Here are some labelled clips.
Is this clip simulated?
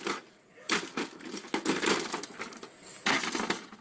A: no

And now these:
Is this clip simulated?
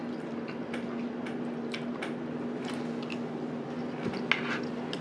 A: no